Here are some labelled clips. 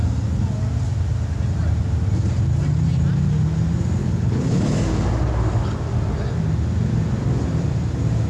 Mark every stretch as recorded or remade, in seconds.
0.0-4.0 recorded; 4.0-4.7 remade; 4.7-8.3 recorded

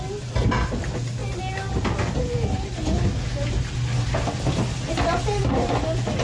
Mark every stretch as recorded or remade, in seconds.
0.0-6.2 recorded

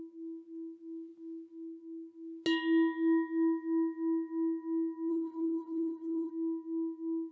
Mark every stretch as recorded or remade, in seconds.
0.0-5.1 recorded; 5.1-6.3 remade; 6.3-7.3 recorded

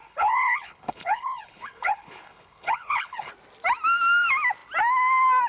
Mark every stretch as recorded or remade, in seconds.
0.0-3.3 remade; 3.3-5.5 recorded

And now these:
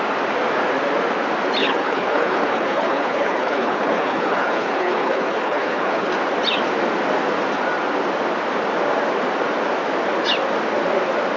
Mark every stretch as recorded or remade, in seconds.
0.0-1.6 recorded; 1.6-6.1 remade; 6.1-11.4 recorded